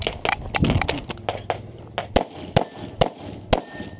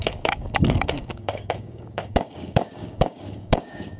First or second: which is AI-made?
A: second